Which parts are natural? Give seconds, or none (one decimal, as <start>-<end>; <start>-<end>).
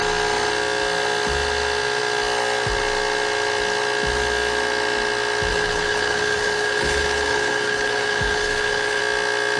0.0-5.5; 9.0-9.6